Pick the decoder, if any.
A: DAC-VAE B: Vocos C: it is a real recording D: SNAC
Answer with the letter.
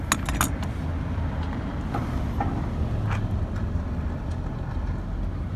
C